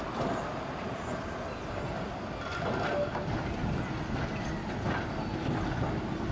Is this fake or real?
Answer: real